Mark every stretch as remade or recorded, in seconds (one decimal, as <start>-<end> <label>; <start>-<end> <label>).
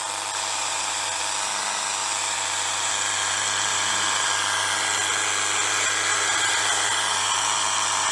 0.0-0.5 recorded; 0.5-1.2 remade; 1.2-2.0 recorded; 2.0-2.9 remade; 2.9-3.7 recorded; 3.7-4.3 remade; 4.3-6.1 recorded; 6.1-8.1 remade